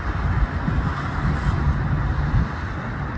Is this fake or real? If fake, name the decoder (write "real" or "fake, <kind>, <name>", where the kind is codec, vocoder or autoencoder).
real